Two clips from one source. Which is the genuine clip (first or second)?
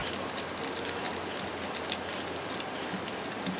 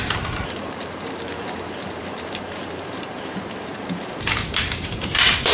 first